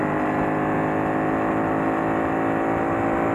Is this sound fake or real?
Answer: real